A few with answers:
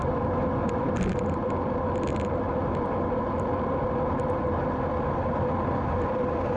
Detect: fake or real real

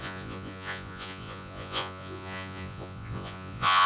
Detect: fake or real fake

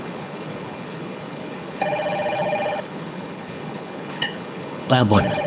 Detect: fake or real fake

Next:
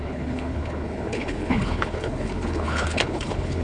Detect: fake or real fake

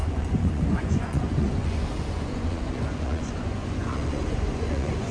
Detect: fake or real fake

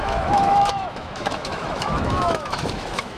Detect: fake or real fake